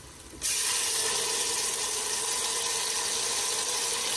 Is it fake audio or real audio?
real